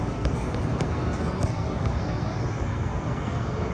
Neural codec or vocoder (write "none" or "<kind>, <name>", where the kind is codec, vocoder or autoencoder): codec, SNAC